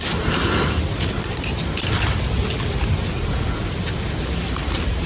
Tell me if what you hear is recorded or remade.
recorded